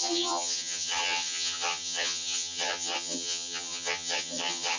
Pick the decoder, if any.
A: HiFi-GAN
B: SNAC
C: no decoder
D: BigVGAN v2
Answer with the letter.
A